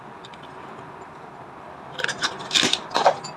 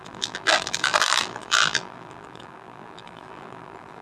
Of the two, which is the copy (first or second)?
second